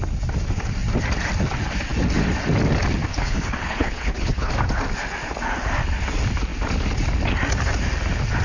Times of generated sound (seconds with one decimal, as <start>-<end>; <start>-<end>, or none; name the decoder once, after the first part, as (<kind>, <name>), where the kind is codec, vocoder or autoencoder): 3.1-4.5 (codec, HILCodec)